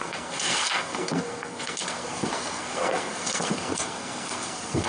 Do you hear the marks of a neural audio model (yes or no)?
yes